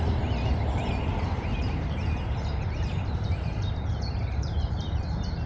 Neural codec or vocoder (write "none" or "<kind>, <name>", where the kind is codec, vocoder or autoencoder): vocoder, BigVGAN v2